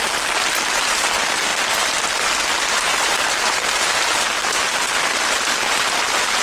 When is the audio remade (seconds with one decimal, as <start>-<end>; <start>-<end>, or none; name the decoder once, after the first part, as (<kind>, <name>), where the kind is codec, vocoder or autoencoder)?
none